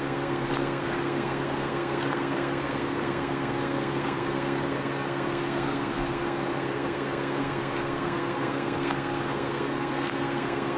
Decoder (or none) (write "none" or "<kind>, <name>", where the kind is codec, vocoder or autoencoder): codec, SNAC